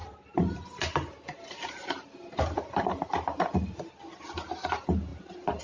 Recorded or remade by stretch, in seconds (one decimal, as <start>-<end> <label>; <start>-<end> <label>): 0.0-3.4 remade; 3.4-5.1 recorded; 5.1-5.6 remade